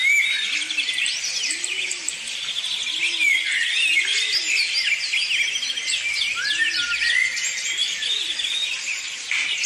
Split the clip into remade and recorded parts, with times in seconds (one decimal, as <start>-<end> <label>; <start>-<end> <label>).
0.0-9.7 recorded